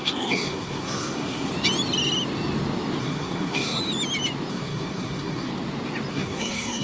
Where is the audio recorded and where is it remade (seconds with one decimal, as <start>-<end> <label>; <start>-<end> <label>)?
0.0-1.5 remade; 1.5-3.0 recorded; 3.0-3.8 remade; 3.8-4.5 recorded; 4.5-5.5 remade; 5.5-6.1 recorded; 6.1-6.8 remade